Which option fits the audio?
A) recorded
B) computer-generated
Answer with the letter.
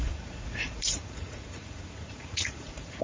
B